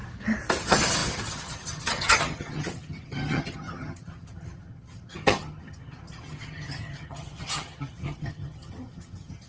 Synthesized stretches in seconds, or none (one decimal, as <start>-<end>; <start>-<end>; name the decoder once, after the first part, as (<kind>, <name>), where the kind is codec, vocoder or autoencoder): 0.6-9.5 (vocoder, HiFi-GAN)